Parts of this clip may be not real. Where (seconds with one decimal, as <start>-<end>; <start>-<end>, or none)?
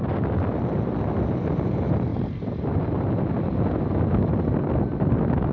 none